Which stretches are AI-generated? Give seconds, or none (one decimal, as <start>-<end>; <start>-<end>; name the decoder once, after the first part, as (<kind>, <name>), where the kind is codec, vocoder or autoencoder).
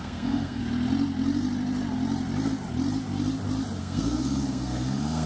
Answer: 0.0-0.6 (codec, SNAC); 3.8-5.3